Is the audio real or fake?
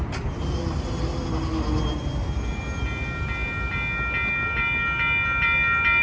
real